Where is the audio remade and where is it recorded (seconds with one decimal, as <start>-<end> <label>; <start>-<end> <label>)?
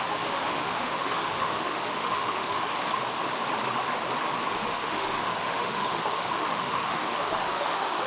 0.0-2.7 remade; 2.7-4.5 recorded; 4.5-8.1 remade